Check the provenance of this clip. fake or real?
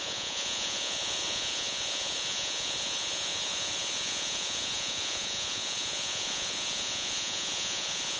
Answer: fake